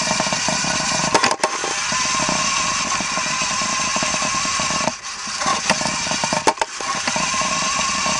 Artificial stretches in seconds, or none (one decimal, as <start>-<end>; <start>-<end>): 0.0-1.0; 3.5-3.9; 7.5-8.2